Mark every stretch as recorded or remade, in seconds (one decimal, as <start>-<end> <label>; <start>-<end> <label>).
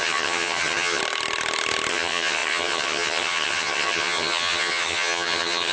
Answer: 0.0-1.0 remade; 1.0-1.9 recorded; 1.9-5.7 remade